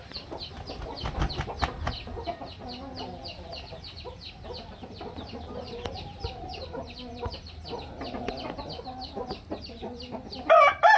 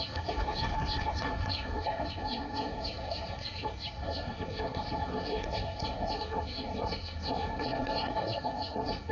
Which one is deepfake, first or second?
second